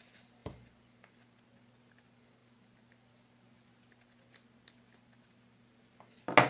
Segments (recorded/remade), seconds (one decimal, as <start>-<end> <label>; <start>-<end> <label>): 0.0-6.5 recorded